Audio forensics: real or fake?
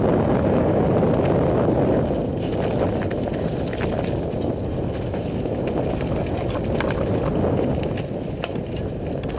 real